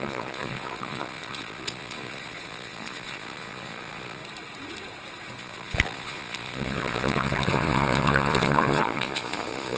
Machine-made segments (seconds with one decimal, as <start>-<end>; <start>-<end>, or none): 0.0-4.2; 5.4-9.8